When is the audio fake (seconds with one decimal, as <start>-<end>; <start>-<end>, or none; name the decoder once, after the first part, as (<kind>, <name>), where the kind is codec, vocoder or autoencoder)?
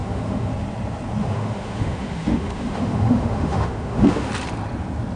0.0-0.5 (autoencoder, DAC-VAE); 1.2-4.3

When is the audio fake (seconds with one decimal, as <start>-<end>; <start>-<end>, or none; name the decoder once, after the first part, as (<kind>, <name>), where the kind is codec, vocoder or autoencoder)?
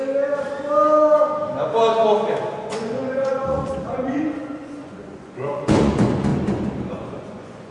2.6-6.3 (vocoder, Vocos); 6.9-7.7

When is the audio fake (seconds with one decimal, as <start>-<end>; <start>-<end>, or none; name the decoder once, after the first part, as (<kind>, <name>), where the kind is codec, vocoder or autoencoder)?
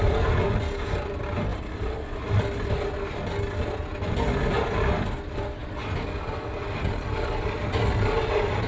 none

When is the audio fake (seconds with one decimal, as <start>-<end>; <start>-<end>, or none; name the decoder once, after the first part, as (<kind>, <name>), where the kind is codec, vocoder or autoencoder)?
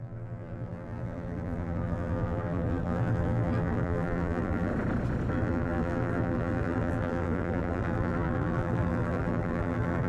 0.0-4.7 (vocoder, BigVGAN v2); 5.3-10.1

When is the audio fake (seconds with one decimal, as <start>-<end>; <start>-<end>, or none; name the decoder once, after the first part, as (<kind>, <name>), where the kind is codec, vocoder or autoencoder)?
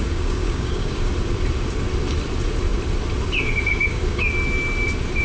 0.0-1.1 (codec, DAC); 3.7-4.3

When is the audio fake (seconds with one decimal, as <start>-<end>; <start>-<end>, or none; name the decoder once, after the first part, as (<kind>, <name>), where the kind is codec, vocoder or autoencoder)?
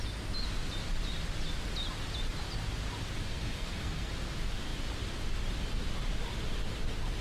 3.2-4.1 (codec, SNAC)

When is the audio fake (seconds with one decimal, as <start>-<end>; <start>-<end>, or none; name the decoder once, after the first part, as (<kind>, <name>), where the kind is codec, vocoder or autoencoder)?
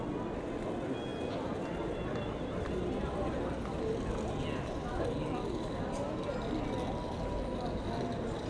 none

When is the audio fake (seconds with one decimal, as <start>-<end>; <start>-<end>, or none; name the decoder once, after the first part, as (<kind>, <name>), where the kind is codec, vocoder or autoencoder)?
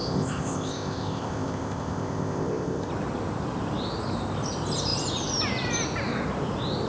0.0-2.9 (codec, ZipCodec)